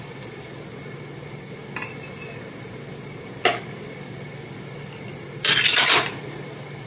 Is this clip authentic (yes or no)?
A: yes